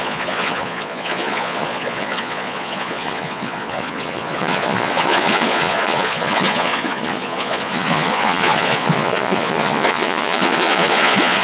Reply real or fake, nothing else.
fake